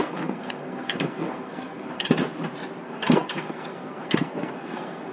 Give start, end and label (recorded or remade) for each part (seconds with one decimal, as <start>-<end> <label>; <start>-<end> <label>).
0.0-2.2 remade; 2.2-2.8 recorded; 2.8-5.1 remade